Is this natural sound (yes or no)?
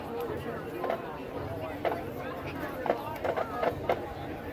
yes